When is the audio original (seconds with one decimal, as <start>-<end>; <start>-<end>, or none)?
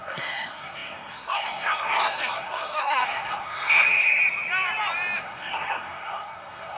4.2-5.2